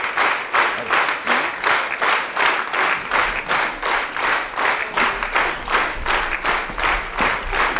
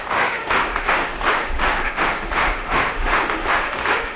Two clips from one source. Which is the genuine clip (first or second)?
first